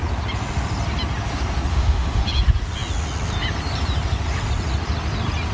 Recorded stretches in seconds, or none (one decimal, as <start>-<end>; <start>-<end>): 0.0-1.7; 2.2-5.5